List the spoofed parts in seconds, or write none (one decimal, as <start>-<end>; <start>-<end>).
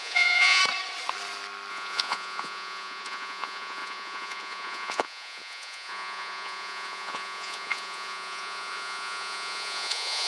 0.0-0.6; 1.7-10.3